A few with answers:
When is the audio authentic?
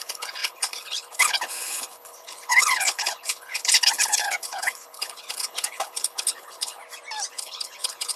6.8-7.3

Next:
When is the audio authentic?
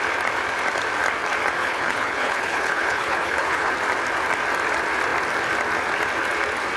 0.0-1.6; 3.7-6.8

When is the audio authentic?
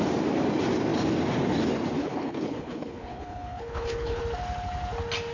0.0-2.0; 4.2-5.3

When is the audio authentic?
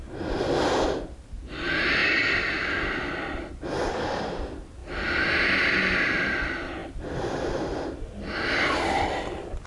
0.0-9.7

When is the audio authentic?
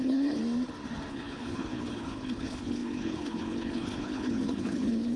0.4-1.1